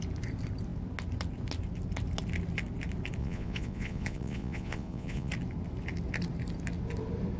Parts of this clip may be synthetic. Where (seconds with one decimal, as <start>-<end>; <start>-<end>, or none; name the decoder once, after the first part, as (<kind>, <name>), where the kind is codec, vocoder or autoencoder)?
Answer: 3.2-5.3 (vocoder, Vocos)